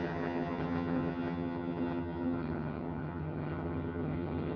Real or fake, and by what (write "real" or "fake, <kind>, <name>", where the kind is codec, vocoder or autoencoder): fake, vocoder, HiFi-GAN